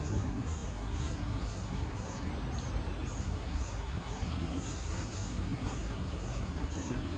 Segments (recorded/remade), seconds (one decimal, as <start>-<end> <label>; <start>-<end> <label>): 0.0-2.3 remade; 2.3-3.2 recorded; 3.2-7.2 remade